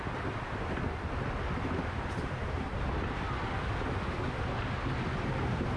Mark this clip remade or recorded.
recorded